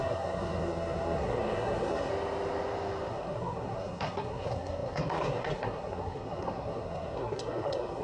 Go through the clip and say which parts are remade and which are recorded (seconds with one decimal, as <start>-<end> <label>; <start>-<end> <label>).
0.0-2.1 remade; 2.1-3.1 recorded; 3.1-8.0 remade